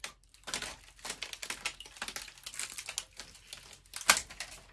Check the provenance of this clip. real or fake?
real